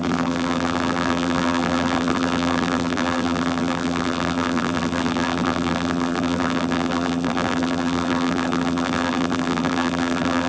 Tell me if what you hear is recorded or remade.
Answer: remade